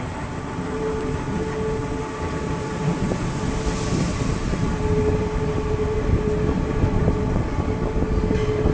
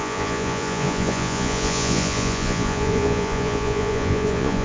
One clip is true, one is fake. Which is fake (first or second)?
second